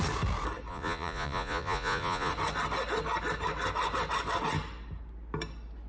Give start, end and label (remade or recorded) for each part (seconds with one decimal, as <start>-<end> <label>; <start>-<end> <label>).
0.0-0.7 recorded; 0.7-2.3 remade; 2.3-5.9 recorded